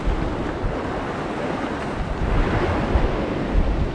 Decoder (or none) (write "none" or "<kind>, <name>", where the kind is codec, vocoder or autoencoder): none